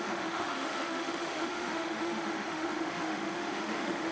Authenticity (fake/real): fake